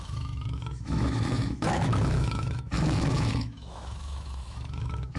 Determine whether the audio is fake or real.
fake